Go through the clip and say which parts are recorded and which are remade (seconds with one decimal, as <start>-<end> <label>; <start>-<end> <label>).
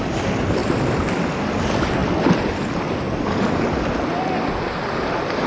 0.0-5.5 recorded